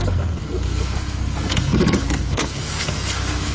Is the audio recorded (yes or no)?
no